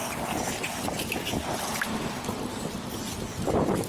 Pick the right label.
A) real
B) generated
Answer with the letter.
A